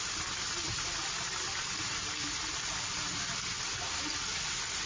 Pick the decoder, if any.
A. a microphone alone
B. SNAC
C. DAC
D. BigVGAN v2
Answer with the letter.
A